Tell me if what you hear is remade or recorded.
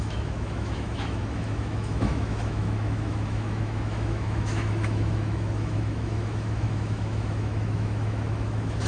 remade